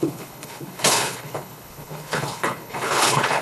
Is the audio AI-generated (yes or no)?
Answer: yes